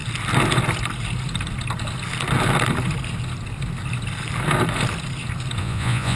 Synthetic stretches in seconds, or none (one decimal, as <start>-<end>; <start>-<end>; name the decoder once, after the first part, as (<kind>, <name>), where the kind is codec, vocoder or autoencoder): 5.6-6.2 (vocoder, Vocos)

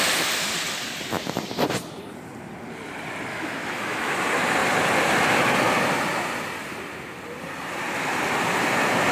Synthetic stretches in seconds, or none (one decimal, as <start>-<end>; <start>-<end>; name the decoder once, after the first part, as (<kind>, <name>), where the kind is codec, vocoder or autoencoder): 3.3-4.1 (autoencoder, DAC-VAE)

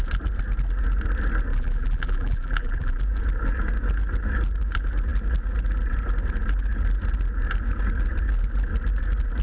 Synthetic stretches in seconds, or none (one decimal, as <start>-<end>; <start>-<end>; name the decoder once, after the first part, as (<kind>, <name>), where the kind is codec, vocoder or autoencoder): 1.5-3.0 (vocoder, BigVGAN v2)